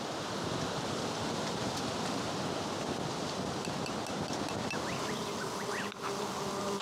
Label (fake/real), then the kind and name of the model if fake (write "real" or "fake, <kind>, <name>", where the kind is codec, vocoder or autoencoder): real